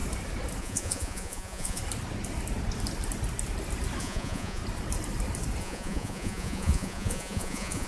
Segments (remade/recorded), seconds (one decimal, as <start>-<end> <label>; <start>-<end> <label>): 0.0-0.6 recorded; 0.6-1.8 remade; 1.8-4.0 recorded; 4.0-4.6 remade; 4.6-5.6 recorded; 5.6-7.9 remade